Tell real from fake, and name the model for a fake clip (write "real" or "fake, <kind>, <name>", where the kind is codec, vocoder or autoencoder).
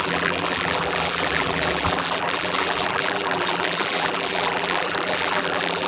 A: fake, vocoder, BigVGAN v2